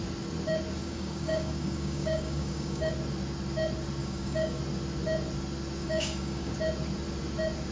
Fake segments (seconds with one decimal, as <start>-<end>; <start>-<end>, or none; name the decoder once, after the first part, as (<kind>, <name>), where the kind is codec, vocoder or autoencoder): 0.8-2.9 (codec, DAC); 4.0-4.6; 5.8-6.5